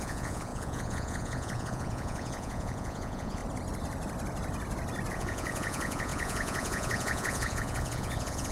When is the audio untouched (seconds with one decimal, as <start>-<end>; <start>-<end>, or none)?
3.4-5.1